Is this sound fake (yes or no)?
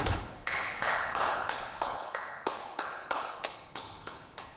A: yes